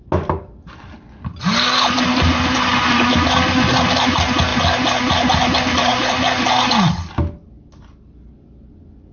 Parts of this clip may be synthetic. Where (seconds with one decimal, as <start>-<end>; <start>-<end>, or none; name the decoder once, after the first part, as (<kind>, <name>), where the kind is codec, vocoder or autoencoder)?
none